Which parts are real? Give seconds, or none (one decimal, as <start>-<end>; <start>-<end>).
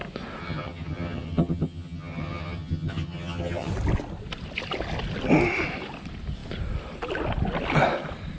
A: 0.0-0.4; 3.7-8.4